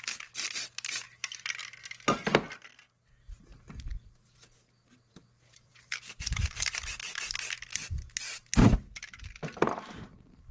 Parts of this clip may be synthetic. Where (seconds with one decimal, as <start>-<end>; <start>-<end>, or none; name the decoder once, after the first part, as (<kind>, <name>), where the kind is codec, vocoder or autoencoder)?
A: none